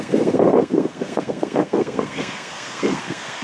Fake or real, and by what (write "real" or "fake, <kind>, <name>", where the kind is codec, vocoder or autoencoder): fake, codec, SNAC